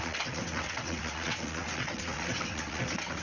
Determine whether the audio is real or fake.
fake